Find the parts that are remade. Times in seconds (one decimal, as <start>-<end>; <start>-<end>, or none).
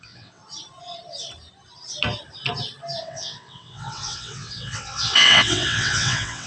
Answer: 0.0-0.4; 3.0-6.5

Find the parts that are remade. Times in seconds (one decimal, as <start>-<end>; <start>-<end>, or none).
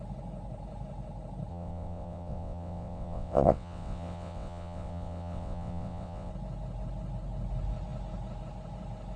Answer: 1.5-6.3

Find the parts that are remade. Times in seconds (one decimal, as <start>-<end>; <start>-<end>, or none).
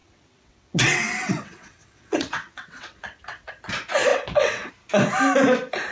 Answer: 0.0-3.5; 4.1-4.7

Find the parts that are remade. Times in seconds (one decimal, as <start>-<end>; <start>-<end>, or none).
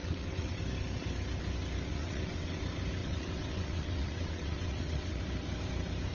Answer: 0.0-0.6; 1.9-2.6; 3.0-5.2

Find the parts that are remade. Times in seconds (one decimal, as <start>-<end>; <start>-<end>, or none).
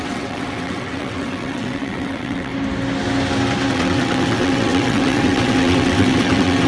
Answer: 0.0-2.5; 3.7-6.7